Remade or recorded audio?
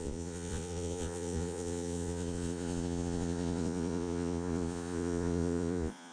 remade